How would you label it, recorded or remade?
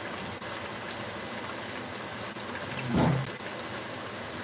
recorded